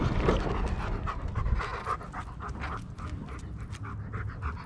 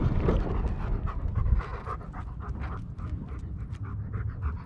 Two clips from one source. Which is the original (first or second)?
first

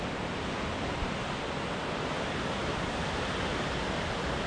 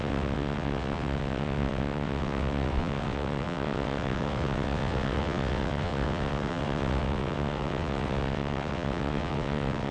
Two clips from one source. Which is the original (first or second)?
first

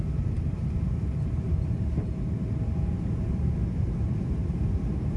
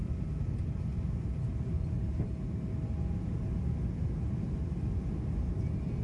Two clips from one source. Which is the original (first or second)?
second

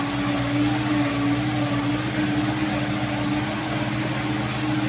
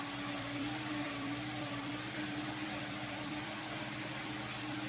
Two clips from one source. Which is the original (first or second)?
first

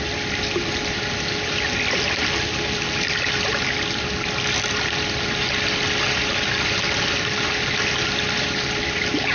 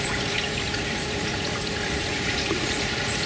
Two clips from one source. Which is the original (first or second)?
first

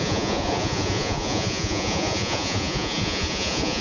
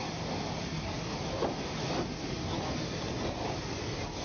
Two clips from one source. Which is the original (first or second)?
second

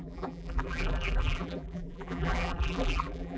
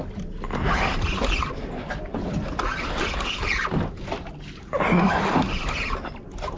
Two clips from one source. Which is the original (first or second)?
second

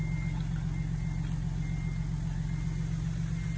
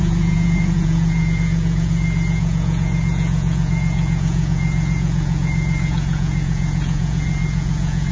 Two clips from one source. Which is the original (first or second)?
first